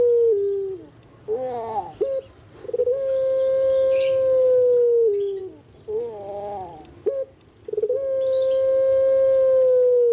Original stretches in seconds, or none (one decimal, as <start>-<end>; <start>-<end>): 0.0-10.1